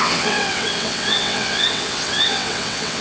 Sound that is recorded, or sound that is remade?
remade